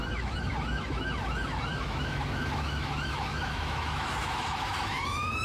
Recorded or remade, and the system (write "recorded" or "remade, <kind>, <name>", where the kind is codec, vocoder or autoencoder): remade, autoencoder, DAC-VAE